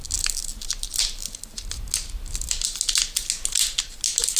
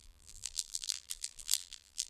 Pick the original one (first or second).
first